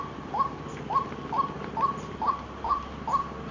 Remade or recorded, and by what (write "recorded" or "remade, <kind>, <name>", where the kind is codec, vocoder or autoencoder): recorded